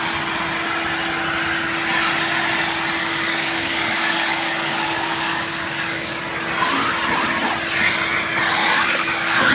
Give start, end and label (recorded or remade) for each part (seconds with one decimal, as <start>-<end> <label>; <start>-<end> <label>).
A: 0.0-3.0 recorded; 3.0-6.2 remade; 6.2-8.6 recorded; 8.6-9.5 remade